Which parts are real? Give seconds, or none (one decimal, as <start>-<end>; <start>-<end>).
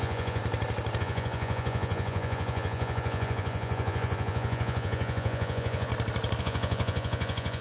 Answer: 0.4-1.0; 5.9-6.4